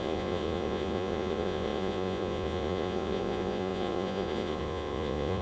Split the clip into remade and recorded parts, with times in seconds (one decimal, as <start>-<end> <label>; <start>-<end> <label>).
0.0-5.4 remade